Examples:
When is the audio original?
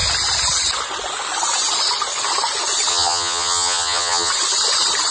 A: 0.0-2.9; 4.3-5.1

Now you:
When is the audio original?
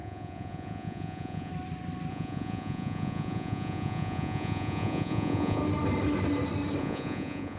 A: 1.5-2.1; 5.6-6.8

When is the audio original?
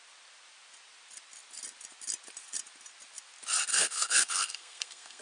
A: 0.0-3.7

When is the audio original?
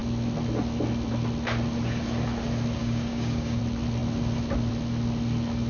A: 0.0-2.8; 3.6-5.7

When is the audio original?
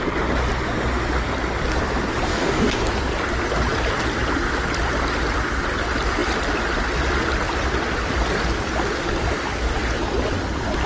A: 0.0-2.3; 2.8-10.9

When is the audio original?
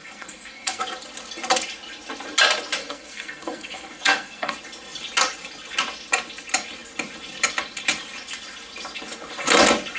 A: 0.8-2.8; 4.5-10.0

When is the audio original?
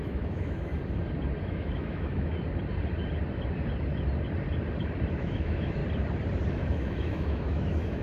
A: 0.7-1.4; 2.3-5.1; 5.8-6.5